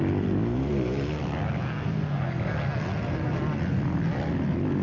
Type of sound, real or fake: real